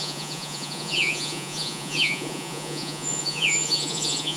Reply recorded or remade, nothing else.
remade